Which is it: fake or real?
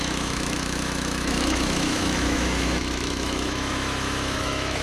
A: fake